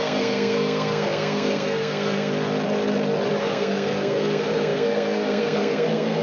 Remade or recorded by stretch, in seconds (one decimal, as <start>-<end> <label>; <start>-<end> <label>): 0.0-2.3 remade; 2.3-3.4 recorded; 3.4-6.2 remade